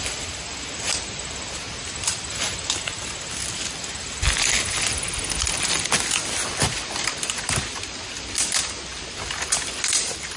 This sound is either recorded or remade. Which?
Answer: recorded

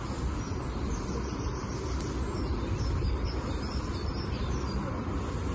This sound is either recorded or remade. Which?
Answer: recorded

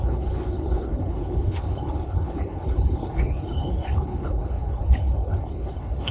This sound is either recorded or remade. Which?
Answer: remade